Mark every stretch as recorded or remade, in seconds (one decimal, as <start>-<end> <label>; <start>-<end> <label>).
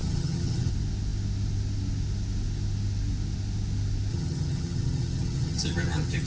0.0-0.7 remade; 0.7-4.1 recorded; 4.1-6.3 remade